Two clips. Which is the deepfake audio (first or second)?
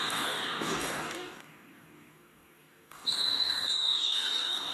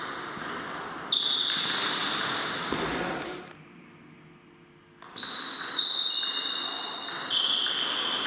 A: first